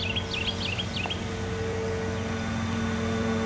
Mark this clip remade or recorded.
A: recorded